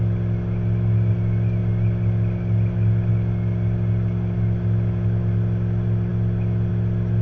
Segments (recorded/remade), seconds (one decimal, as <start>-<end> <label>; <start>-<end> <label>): 0.0-7.2 recorded